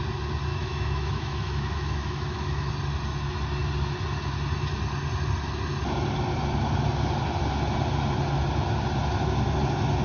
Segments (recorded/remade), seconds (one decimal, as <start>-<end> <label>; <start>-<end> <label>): 0.0-0.5 recorded; 0.5-2.7 remade; 2.7-10.0 recorded